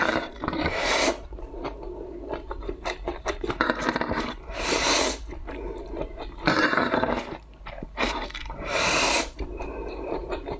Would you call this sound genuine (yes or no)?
no